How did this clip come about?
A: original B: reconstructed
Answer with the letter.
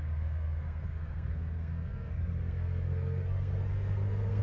B